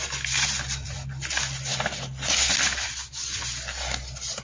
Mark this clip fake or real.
real